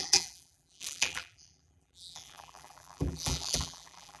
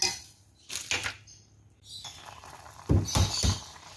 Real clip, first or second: second